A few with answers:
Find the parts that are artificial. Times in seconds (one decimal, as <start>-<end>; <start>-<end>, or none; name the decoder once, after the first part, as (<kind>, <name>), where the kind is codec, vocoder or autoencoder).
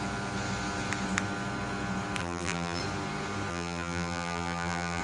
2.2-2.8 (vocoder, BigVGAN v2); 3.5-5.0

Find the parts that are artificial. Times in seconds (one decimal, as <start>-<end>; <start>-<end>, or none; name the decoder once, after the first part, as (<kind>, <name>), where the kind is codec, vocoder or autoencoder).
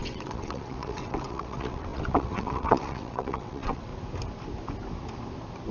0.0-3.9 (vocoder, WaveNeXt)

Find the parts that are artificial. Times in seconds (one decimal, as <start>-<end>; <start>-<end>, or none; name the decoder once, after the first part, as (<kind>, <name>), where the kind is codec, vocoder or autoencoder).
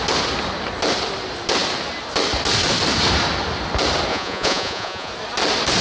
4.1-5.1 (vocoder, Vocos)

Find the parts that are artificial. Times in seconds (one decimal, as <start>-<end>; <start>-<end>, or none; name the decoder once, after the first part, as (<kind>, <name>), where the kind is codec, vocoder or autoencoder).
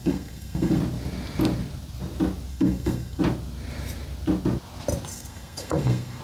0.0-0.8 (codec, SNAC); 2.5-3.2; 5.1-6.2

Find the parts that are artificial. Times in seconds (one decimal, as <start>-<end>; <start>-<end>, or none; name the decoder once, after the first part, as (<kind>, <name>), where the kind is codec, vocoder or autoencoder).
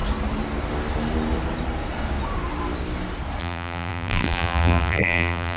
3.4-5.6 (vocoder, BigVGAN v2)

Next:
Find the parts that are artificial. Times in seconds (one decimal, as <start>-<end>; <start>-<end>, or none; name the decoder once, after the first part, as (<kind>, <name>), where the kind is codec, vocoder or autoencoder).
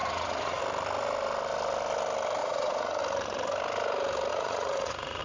0.0-0.6 (vocoder, Vocos); 2.4-3.0; 4.3-5.2